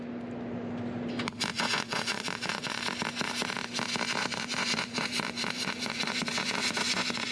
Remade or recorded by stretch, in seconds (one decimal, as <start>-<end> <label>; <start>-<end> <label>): 0.0-1.5 recorded; 1.5-2.8 remade; 2.8-4.2 recorded; 4.2-7.3 remade